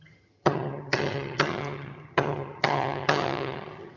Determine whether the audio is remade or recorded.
remade